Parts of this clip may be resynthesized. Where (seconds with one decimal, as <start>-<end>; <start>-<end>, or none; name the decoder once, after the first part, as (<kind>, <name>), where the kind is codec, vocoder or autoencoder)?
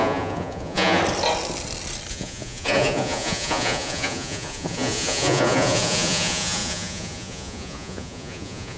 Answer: 0.0-1.0 (vocoder, Vocos); 2.1-8.8